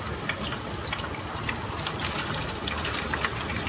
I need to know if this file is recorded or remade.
recorded